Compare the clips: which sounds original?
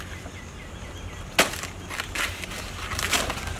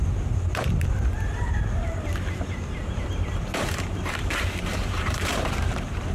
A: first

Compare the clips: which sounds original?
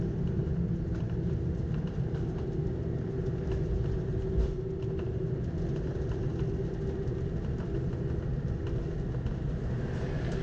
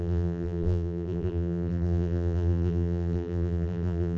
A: first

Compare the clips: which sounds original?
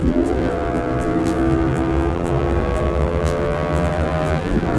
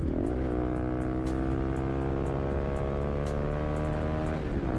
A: second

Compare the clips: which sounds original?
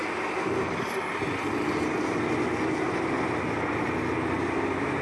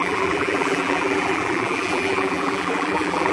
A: first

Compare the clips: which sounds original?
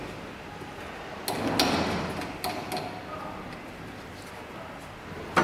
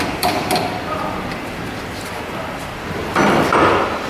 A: first